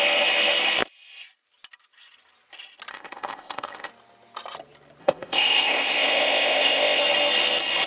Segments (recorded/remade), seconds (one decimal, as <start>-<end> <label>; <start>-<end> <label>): 0.0-2.9 recorded; 2.9-3.9 remade; 3.9-5.0 recorded; 5.0-7.0 remade; 7.0-7.9 recorded